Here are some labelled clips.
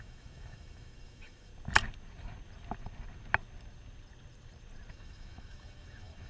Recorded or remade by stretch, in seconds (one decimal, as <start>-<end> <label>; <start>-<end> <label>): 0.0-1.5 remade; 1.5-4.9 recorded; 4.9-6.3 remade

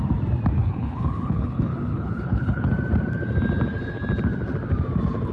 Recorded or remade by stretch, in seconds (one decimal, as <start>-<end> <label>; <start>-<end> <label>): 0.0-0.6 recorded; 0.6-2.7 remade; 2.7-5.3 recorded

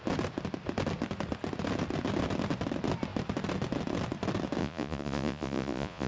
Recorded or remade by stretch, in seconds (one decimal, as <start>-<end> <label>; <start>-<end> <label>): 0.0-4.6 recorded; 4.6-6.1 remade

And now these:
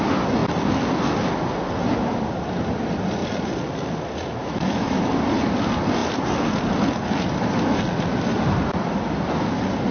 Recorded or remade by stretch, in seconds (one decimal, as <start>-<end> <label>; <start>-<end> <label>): 0.0-4.4 recorded; 4.4-5.1 remade; 5.1-9.9 recorded

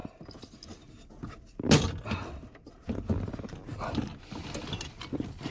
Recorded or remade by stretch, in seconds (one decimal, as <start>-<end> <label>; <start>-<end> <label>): 0.0-5.5 recorded